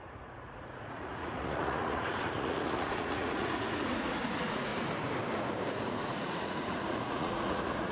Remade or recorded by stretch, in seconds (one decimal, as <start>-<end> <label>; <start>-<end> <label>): 0.0-4.7 remade; 4.7-5.7 recorded; 5.7-7.9 remade